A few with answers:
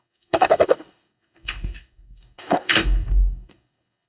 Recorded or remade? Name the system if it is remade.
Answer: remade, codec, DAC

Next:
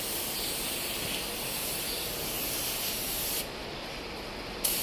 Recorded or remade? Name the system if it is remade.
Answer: recorded